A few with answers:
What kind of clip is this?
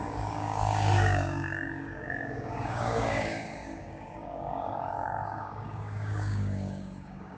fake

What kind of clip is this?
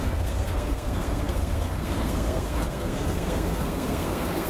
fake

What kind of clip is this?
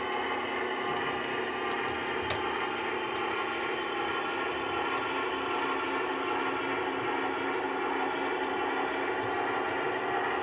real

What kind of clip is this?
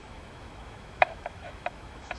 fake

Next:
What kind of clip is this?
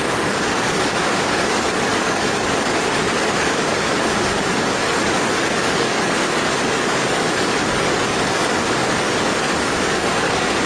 fake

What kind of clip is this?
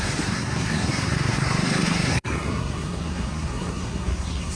fake